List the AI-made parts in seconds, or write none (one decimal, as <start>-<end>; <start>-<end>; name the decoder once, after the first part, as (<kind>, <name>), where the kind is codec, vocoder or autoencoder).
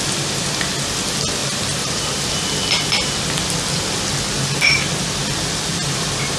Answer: 1.4-4.1 (vocoder, BigVGAN v2); 4.7-5.2